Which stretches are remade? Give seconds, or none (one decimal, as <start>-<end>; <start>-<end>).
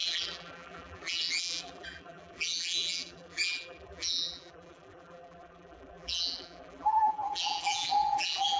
0.0-8.6